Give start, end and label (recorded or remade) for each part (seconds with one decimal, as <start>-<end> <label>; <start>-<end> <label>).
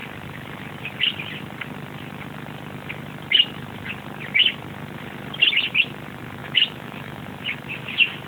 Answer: 0.0-6.4 recorded; 6.4-7.2 remade; 7.2-8.3 recorded